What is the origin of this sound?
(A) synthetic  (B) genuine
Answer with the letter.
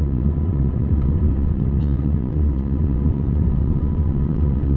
A